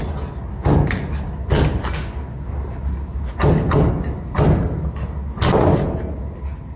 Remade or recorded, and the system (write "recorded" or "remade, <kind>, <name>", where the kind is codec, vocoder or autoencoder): recorded